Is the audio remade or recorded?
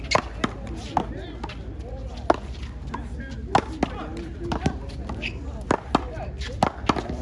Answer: recorded